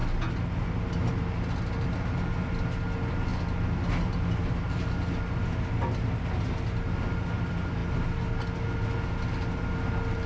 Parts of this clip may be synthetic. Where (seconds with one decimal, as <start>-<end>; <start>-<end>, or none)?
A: none